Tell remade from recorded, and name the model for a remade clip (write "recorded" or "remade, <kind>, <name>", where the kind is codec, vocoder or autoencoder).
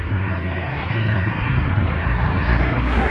remade, codec, SNAC